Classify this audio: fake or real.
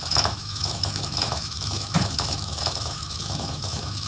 fake